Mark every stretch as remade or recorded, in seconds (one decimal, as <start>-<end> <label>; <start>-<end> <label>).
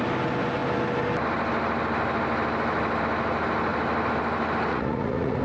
0.0-4.7 recorded; 4.7-5.4 remade